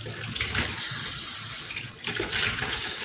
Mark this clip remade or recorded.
recorded